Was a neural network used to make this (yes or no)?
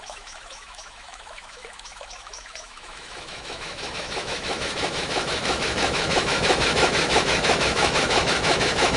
yes